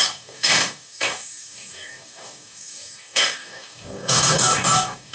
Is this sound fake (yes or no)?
yes